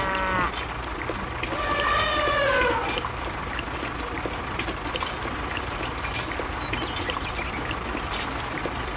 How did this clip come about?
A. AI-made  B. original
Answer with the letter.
B